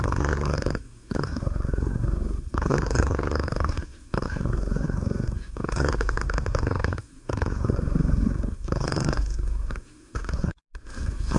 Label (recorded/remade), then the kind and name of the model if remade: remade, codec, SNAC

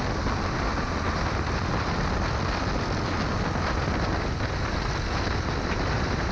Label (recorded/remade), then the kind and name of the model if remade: recorded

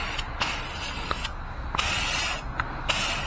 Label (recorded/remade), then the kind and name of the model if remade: recorded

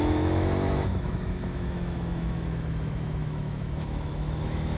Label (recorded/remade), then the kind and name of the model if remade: remade, autoencoder, DAC-VAE